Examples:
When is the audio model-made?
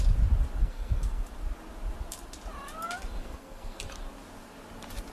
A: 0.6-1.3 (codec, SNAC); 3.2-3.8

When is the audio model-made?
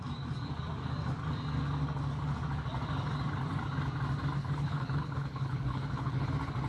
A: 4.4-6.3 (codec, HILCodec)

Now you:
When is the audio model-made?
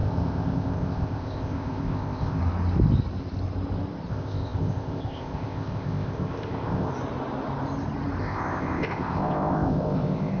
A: 0.0-2.4 (codec, ZipCodec); 4.1-6.9; 8.2-10.4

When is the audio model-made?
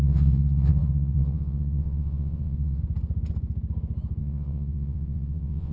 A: 0.0-2.8 (vocoder, WaveNeXt); 4.2-5.7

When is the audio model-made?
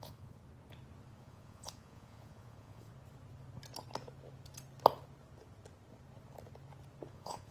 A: 0.0-0.4 (vocoder, Vocos); 1.2-2.9; 7.1-7.5